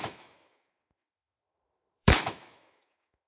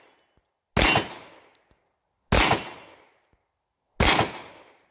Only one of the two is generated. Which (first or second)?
first